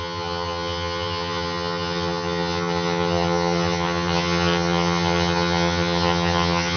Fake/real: fake